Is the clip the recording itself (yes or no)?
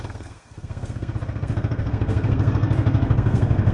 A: no